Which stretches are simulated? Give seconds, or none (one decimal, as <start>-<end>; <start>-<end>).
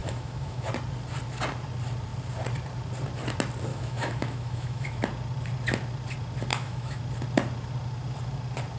0.0-0.7; 3.7-5.0; 6.5-7.0